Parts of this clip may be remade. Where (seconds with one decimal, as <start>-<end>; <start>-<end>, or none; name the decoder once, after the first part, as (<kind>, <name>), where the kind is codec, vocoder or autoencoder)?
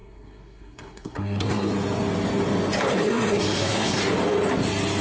0.0-1.7 (codec, SNAC); 2.9-4.0